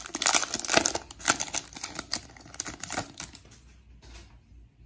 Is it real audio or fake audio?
real